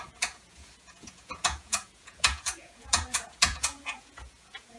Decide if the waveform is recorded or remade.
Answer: remade